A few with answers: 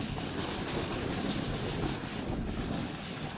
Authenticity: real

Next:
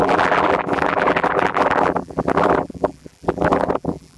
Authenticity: fake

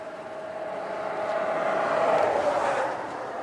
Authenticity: real